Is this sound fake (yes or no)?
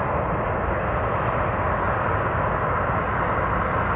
no